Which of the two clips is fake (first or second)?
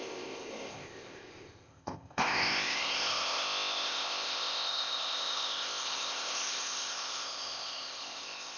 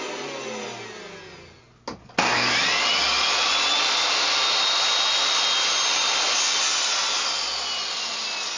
first